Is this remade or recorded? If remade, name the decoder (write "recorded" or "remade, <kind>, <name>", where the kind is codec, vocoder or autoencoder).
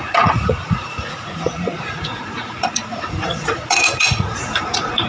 remade, vocoder, Vocos